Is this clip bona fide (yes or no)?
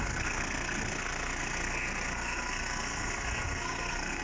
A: no